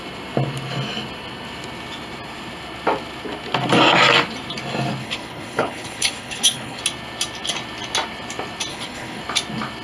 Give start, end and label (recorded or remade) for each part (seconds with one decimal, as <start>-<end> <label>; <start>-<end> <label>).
0.0-5.0 recorded; 5.0-6.8 remade; 6.8-8.7 recorded; 8.7-9.2 remade; 9.2-9.8 recorded